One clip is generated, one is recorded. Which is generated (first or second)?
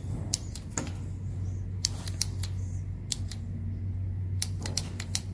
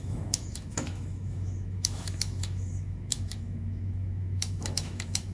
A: second